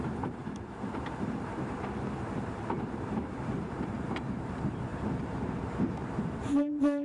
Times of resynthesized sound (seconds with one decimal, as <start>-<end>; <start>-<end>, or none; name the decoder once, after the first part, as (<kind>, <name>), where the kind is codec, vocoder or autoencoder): 0.0-7.0 (vocoder, BigVGAN v2)